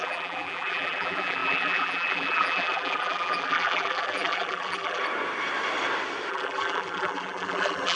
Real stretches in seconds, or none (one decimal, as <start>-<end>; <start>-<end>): 5.0-6.3